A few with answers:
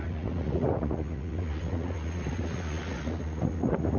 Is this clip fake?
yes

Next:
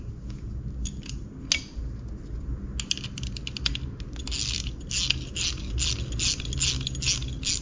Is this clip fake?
no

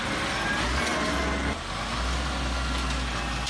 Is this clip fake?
no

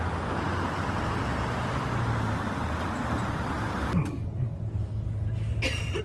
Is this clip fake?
no